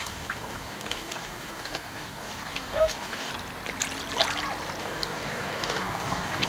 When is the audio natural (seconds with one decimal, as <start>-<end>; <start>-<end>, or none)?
3.3-4.8